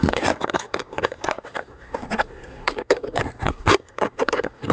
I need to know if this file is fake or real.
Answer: fake